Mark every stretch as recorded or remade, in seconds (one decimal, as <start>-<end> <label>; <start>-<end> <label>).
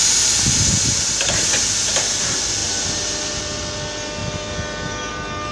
0.0-2.6 recorded; 2.6-3.4 remade; 3.4-5.5 recorded